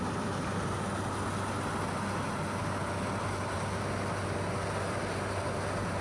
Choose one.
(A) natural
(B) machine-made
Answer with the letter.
A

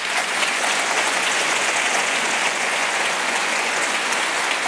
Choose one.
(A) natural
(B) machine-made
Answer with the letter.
B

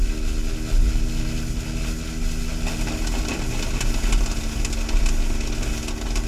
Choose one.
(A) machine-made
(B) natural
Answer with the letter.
B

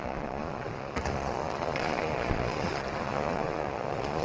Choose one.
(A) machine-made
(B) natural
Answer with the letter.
A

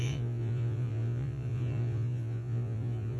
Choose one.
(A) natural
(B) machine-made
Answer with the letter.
B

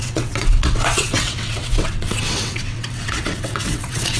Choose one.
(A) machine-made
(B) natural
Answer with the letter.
A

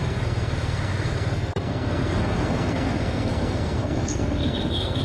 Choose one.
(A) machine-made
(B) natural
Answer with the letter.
A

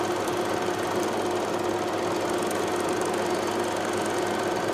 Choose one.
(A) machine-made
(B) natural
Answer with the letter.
B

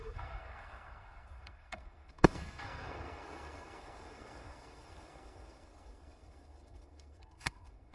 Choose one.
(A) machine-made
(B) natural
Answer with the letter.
A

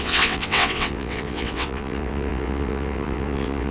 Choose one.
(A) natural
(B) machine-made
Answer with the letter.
B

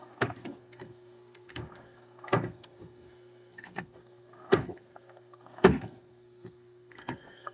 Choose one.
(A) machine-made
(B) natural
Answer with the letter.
A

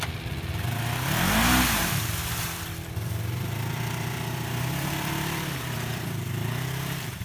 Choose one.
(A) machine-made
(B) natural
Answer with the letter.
A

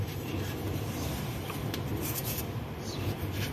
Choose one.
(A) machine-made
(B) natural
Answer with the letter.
A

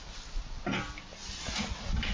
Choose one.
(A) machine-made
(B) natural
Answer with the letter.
B